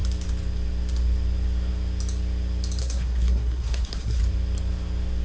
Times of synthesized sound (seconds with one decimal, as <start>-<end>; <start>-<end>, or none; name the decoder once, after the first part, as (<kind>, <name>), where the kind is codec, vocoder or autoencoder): 2.8-4.2 (codec, SNAC)